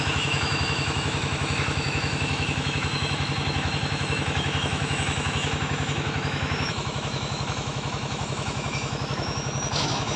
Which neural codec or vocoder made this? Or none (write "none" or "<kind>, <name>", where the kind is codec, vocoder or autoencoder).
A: autoencoder, DAC-VAE